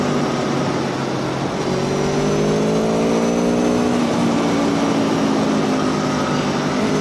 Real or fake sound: real